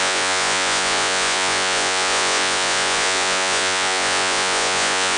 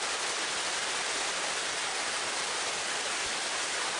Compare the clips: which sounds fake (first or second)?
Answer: first